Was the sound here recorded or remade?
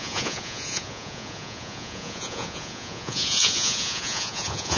remade